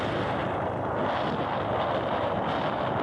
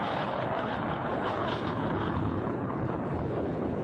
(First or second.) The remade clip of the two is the second